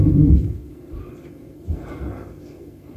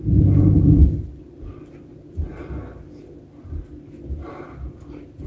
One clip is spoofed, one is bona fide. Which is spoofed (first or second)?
first